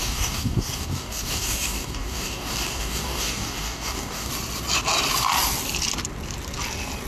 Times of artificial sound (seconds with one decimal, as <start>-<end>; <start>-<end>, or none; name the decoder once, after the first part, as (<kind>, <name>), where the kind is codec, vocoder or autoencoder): 0.0-4.3 (codec, DAC)